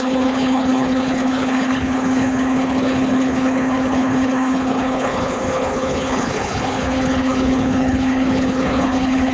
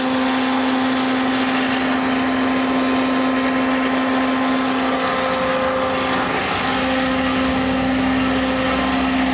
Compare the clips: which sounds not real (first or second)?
first